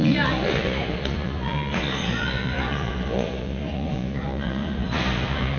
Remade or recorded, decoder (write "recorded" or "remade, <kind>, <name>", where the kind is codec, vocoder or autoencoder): remade, vocoder, Vocos